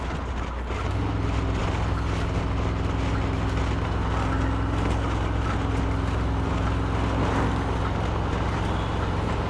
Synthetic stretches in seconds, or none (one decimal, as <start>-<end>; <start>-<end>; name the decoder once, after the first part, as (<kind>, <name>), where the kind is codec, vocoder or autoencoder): none